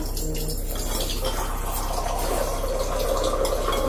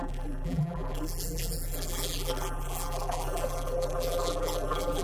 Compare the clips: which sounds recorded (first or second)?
first